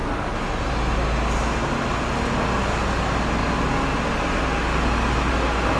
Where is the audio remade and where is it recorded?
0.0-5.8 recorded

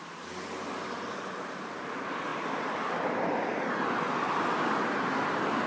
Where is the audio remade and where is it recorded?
0.0-5.7 recorded

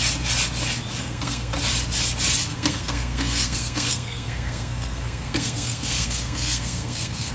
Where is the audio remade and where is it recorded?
0.0-1.0 recorded; 1.0-1.5 remade; 1.5-2.5 recorded; 2.5-7.3 remade

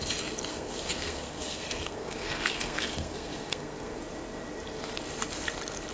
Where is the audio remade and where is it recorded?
0.0-0.5 recorded; 0.5-4.0 remade; 4.0-5.9 recorded